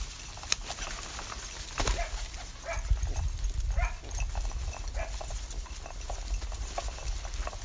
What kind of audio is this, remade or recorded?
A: recorded